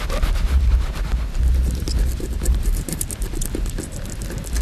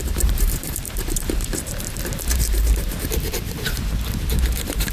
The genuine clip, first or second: first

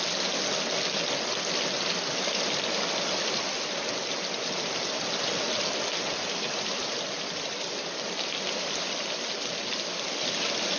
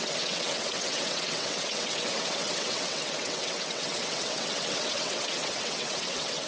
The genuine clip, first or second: first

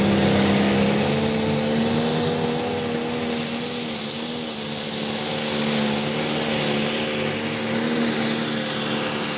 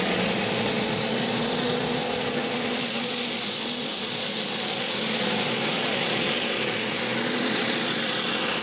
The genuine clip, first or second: first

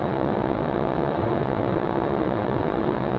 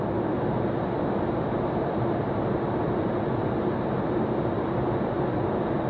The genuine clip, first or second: second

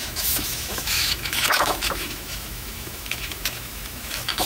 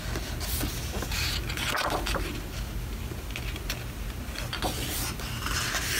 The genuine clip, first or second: second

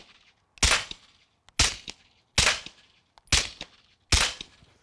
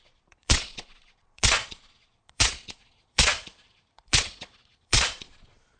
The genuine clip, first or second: first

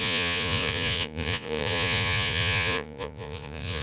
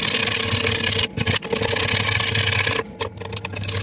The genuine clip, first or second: second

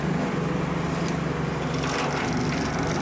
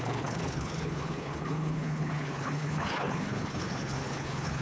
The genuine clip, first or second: first